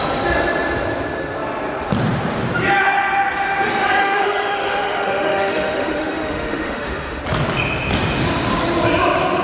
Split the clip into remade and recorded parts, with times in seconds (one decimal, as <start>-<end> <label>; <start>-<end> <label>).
0.0-4.0 recorded; 4.0-7.2 remade; 7.2-9.4 recorded